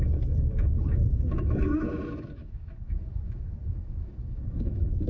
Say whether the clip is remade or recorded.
remade